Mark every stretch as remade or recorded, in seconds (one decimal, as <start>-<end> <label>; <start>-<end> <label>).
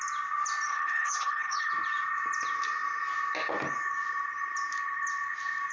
0.0-0.7 recorded; 0.7-1.7 remade; 1.7-5.7 recorded